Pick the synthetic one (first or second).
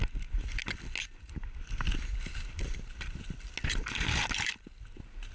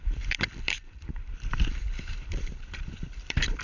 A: second